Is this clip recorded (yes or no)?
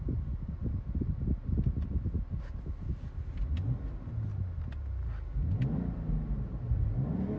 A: yes